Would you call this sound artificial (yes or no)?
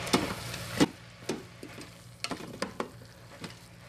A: no